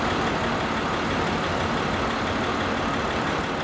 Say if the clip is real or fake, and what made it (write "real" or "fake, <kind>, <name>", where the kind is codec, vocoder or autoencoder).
real